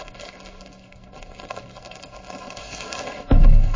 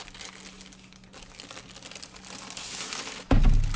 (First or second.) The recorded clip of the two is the second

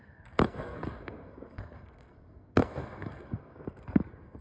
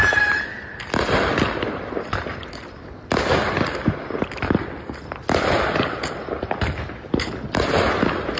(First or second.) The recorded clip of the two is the second